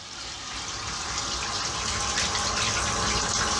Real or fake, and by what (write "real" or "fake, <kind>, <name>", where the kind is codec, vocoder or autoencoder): real